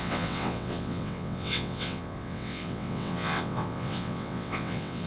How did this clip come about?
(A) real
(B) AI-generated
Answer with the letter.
B